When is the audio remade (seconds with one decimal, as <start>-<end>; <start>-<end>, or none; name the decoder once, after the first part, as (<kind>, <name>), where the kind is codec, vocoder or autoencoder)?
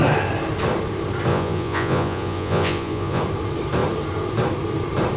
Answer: 1.3-3.2 (vocoder, Vocos)